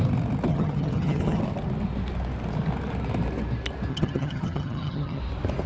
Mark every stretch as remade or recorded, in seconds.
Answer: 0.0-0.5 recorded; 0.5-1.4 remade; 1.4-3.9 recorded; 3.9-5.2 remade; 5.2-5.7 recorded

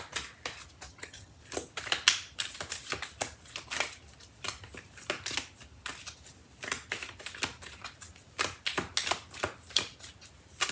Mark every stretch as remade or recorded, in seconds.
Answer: 0.0-0.9 recorded; 0.9-1.4 remade; 1.4-10.7 recorded

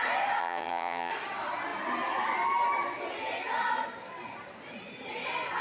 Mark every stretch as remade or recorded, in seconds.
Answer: 0.0-0.4 recorded; 0.4-1.1 remade; 1.1-5.6 recorded

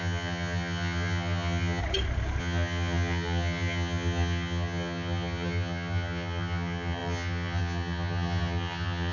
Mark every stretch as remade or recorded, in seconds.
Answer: 0.0-1.8 remade; 1.8-2.4 recorded; 2.4-9.1 remade

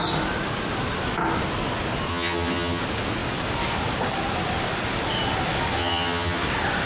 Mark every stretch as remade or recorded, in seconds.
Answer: 0.0-2.1 recorded; 2.1-2.8 remade; 2.8-5.8 recorded; 5.8-6.4 remade; 6.4-6.9 recorded